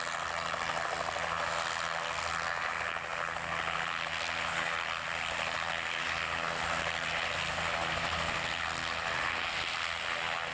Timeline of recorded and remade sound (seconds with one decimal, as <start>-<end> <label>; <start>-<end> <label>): 0.0-10.5 recorded

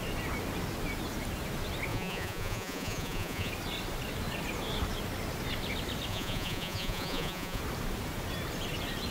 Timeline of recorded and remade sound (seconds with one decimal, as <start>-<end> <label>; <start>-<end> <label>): 0.0-1.9 recorded; 1.9-3.5 remade; 3.5-6.1 recorded; 6.1-7.6 remade; 7.6-9.1 recorded

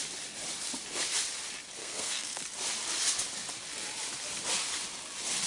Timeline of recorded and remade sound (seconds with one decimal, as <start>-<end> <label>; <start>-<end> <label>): 0.0-1.8 recorded; 1.8-2.4 remade; 2.4-5.5 recorded

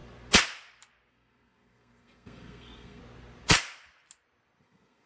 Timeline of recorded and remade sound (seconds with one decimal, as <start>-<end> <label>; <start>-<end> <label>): 0.0-1.1 recorded; 1.1-3.0 remade; 3.0-4.6 recorded; 4.6-5.1 remade

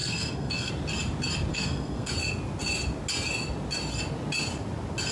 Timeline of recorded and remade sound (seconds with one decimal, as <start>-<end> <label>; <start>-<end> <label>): 0.0-0.7 remade; 0.7-1.5 recorded; 1.5-2.1 remade; 2.1-5.1 recorded

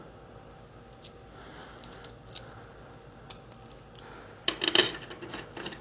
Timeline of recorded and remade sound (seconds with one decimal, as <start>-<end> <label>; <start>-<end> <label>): 0.0-5.8 recorded

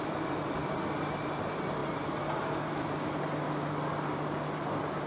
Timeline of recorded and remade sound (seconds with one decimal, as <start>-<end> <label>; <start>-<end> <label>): 0.0-1.8 remade; 1.8-5.1 recorded